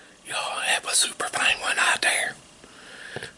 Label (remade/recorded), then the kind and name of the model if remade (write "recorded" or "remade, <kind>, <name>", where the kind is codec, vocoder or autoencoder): remade, vocoder, BigVGAN v2